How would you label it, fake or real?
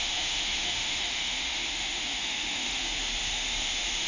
fake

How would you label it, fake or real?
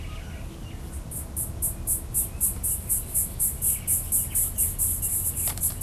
real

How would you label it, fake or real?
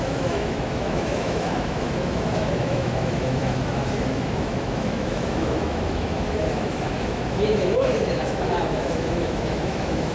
fake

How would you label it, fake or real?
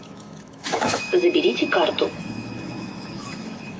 fake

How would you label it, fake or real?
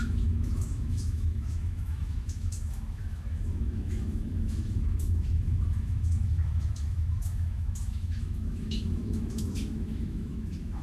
fake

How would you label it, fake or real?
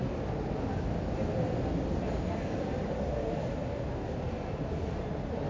real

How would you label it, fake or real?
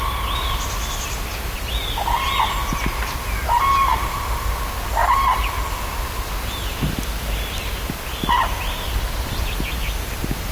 real